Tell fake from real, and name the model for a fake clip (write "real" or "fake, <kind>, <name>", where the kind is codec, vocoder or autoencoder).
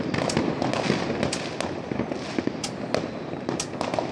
real